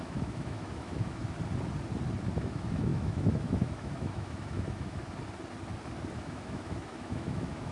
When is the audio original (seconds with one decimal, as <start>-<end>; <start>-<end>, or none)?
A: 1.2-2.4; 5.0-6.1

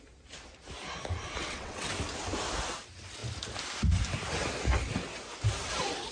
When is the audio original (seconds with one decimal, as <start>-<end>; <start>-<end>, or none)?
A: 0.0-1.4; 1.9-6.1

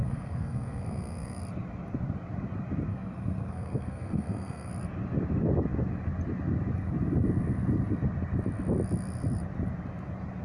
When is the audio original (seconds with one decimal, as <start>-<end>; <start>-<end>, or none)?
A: 1.4-2.9; 4.7-10.4